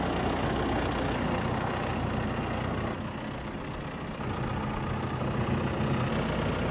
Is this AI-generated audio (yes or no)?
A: no